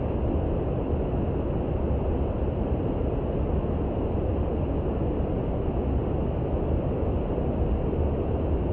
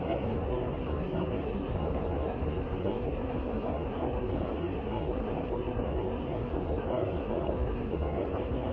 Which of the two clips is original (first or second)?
first